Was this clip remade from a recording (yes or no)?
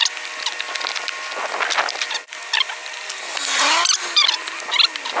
no